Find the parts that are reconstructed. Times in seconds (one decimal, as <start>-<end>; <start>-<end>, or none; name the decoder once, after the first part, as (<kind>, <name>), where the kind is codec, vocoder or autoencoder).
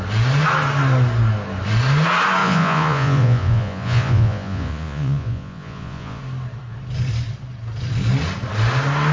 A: 2.4-6.2 (vocoder, Vocos)